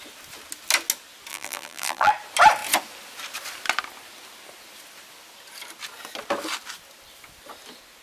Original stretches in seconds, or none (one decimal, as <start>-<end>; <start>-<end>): 0.0-1.3; 2.1-8.0